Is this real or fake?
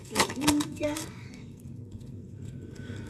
fake